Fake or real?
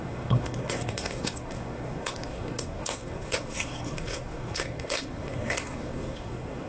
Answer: fake